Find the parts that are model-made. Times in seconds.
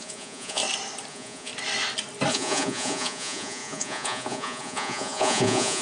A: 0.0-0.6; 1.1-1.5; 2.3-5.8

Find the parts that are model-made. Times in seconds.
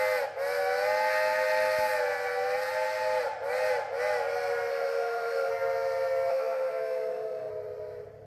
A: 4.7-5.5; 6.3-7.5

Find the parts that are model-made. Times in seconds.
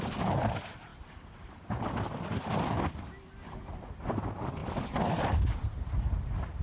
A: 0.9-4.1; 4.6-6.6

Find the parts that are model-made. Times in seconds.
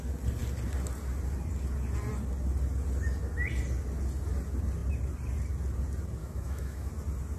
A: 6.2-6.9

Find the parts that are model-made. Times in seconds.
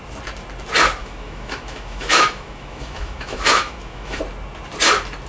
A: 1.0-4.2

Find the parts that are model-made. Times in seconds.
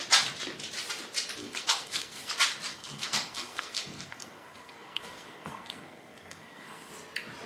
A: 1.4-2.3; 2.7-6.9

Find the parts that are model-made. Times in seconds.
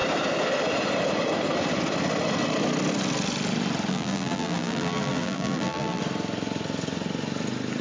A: 3.9-6.0